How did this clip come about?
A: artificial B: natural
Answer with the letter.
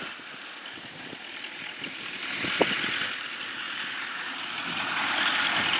B